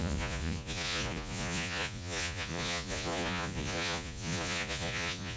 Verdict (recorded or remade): remade